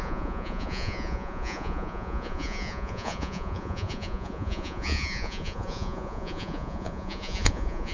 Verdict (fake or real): fake